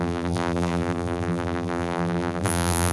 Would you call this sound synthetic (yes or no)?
yes